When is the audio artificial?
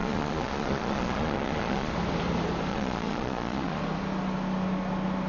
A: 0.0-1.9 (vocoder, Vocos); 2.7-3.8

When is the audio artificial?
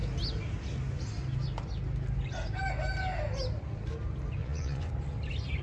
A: 4.4-4.9 (vocoder, Vocos)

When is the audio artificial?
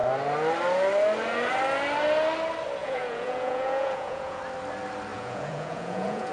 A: 2.8-4.4 (vocoder, Vocos); 5.1-6.3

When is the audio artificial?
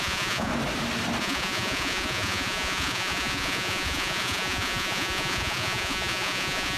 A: 0.0-0.5 (vocoder, Vocos); 1.2-6.8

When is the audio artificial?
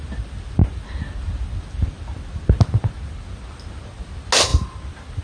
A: none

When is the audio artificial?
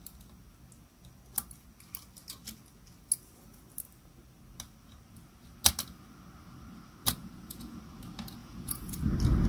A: 7.2-7.8 (vocoder, Vocos); 8.4-9.0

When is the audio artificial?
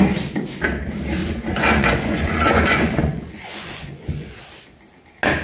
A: 1.2-4.4 (vocoder, Vocos)